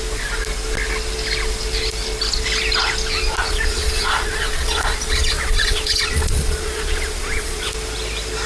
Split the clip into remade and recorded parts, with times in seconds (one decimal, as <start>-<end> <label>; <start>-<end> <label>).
0.0-3.4 recorded; 3.4-7.7 remade; 7.7-8.5 recorded